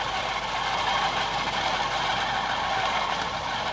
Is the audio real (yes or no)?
yes